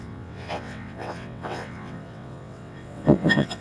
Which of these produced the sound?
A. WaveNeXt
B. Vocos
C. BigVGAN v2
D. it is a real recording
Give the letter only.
A